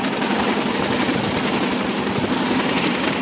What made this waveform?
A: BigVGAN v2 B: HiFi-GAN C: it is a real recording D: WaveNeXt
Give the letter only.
C